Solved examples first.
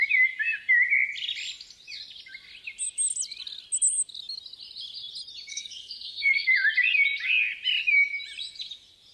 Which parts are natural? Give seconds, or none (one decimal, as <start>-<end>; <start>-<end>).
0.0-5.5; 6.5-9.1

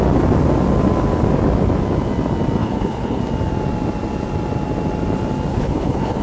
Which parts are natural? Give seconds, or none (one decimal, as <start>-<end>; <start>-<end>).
0.0-2.6; 3.2-5.5

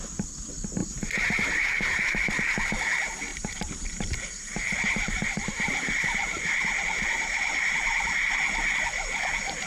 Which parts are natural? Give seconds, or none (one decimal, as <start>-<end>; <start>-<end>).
0.0-0.8; 2.3-3.3; 6.8-9.7

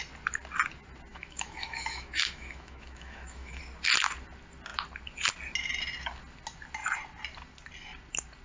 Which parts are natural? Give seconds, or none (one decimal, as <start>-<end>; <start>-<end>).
0.0-1.1; 3.6-8.4

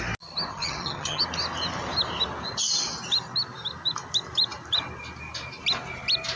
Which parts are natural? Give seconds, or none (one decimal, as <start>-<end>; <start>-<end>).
0.0-0.5; 1.2-6.4

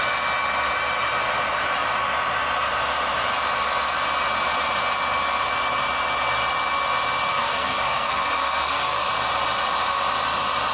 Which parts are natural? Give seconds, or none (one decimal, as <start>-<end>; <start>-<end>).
0.0-7.3; 9.1-10.7